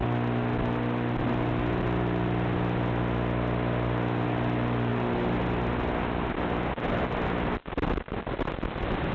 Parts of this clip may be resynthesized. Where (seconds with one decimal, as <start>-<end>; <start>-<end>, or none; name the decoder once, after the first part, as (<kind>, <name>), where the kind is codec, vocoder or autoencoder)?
none